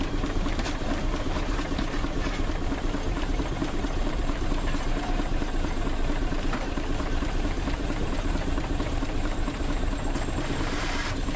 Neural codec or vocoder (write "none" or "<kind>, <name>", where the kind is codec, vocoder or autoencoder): vocoder, BigVGAN v2